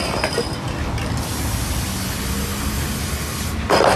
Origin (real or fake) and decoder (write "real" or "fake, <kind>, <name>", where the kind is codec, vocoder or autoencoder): real